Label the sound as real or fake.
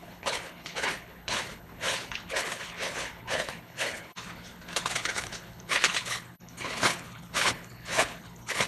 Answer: fake